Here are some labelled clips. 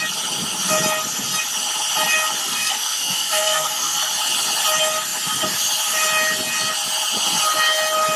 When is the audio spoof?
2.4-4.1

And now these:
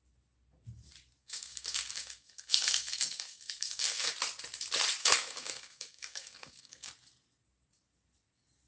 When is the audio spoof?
1.2-4.1; 5.0-6.9